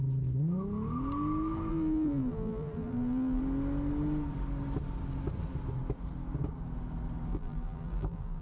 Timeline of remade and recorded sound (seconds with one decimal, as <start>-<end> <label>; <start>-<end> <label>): 0.0-1.7 recorded; 1.7-3.4 remade; 3.4-7.3 recorded; 7.3-8.4 remade